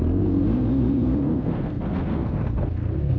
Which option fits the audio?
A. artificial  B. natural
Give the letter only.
A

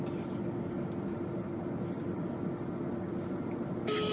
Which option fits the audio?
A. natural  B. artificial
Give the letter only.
A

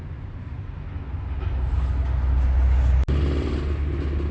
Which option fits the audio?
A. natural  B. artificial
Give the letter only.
A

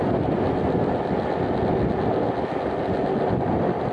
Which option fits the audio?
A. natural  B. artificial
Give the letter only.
A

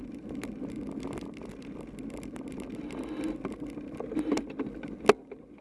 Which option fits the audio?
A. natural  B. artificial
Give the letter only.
A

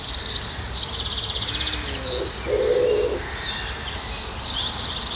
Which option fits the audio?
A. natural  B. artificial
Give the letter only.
A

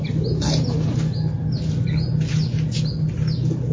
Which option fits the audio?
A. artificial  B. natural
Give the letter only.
B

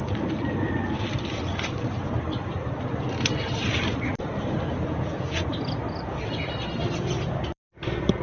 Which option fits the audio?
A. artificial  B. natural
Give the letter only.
B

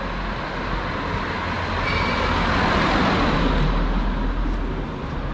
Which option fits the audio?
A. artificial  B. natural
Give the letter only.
B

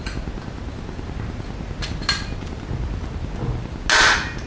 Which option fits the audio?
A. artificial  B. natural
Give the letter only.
B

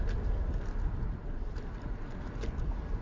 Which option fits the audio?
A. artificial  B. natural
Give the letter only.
B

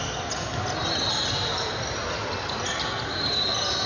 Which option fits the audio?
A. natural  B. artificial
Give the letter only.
A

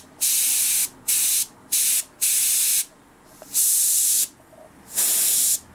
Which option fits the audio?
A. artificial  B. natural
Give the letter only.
B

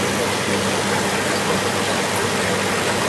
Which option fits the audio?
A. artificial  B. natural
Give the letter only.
B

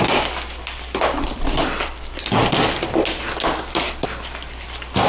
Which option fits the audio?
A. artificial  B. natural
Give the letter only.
B